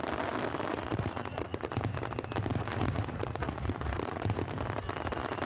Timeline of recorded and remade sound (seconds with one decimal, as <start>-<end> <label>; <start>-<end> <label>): 0.0-0.7 recorded; 0.7-1.7 remade; 1.7-2.5 recorded; 2.5-4.4 remade; 4.4-5.5 recorded